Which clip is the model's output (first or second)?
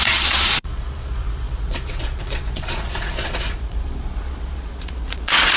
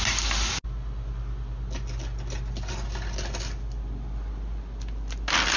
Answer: first